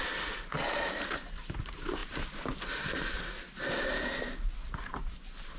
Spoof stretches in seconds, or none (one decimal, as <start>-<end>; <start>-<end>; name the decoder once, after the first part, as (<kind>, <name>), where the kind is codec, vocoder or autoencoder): none